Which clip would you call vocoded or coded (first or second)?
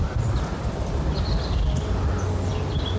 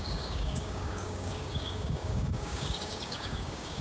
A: second